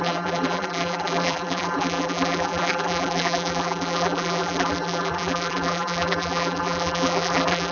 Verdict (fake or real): fake